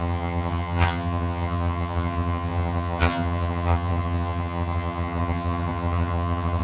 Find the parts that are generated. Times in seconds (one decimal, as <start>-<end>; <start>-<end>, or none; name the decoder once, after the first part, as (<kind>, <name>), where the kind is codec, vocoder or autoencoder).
0.0-6.6 (vocoder, HiFi-GAN)